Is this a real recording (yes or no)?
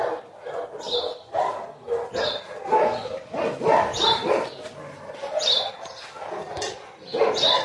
yes